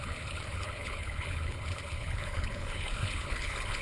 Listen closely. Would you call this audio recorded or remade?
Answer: remade